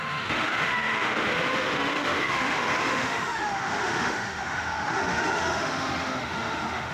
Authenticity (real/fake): fake